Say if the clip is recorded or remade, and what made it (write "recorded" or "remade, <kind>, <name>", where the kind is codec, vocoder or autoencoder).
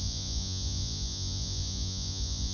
remade, vocoder, Vocos